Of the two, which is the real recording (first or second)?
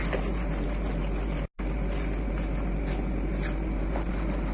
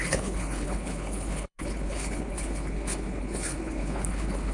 first